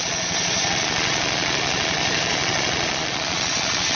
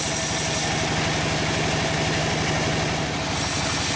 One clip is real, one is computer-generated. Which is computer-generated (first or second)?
first